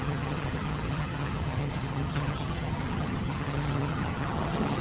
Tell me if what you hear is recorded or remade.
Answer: remade